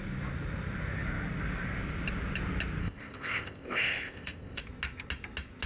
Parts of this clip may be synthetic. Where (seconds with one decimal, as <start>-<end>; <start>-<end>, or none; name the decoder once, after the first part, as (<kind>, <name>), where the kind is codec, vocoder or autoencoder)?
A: 2.8-4.6 (codec, ZipCodec)